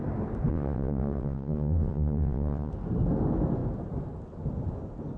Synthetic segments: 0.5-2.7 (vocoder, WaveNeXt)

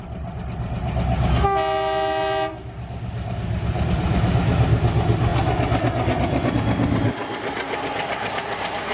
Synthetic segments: none

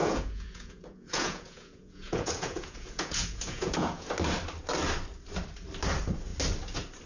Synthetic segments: 0.0-4.1 (vocoder, Vocos)

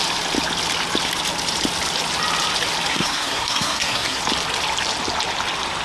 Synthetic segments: 2.9-4.2 (codec, SNAC)

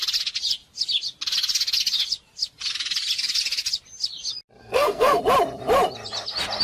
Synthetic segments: 4.6-5.2 (codec, SNAC)

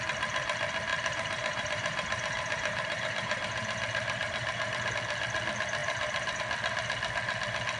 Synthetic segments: 0.9-4.9 (vocoder, BigVGAN v2); 5.8-6.4